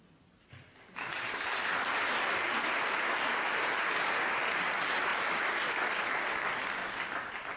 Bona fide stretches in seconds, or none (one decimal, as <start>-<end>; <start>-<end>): 0.0-7.6